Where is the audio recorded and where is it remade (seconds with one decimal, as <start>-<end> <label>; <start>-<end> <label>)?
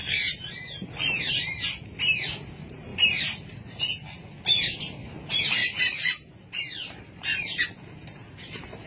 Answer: 0.0-2.9 recorded; 2.9-3.9 remade; 3.9-5.6 recorded; 5.6-7.6 remade; 7.6-8.0 recorded; 8.0-8.9 remade